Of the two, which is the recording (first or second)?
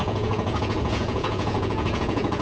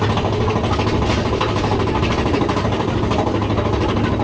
second